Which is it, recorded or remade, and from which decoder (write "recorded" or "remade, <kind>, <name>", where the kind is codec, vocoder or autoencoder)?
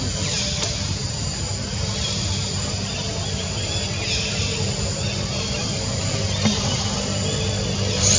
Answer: recorded